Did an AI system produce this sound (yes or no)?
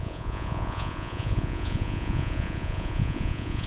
yes